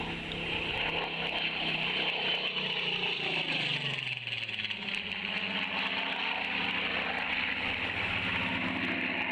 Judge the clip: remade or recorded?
recorded